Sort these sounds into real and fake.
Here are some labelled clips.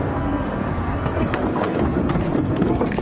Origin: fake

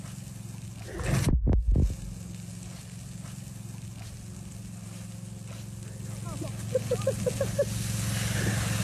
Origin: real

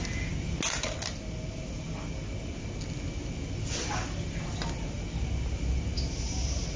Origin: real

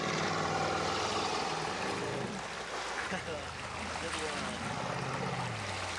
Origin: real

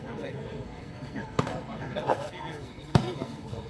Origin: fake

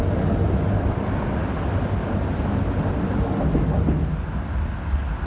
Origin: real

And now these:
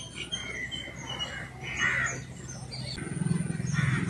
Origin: real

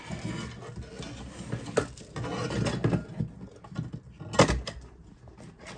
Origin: real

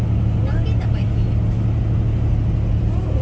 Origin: real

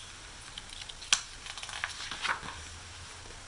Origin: real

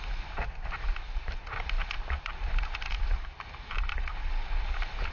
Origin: real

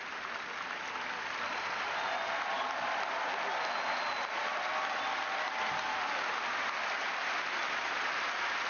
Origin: real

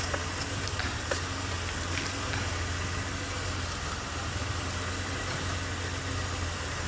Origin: real